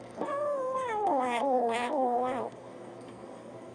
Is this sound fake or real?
fake